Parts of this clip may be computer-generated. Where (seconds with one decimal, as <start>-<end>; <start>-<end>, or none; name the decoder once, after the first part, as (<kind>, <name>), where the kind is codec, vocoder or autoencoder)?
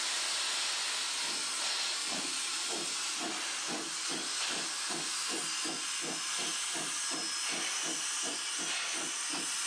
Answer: 2.0-2.5 (vocoder, Vocos)